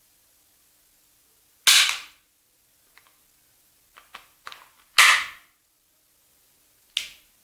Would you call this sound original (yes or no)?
yes